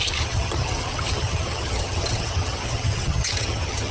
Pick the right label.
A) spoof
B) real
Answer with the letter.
A